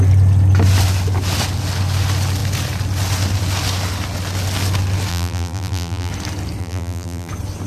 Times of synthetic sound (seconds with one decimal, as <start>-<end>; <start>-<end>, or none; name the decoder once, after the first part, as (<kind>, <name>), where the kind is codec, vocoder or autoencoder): 5.1-6.1 (vocoder, BigVGAN v2); 6.6-7.3